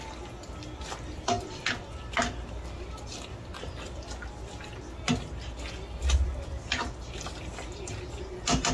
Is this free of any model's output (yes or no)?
yes